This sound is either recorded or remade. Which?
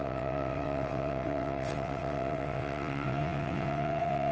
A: remade